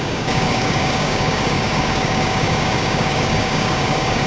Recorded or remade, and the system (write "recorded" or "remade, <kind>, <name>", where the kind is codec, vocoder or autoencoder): remade, codec, DAC